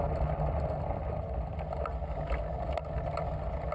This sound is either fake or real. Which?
real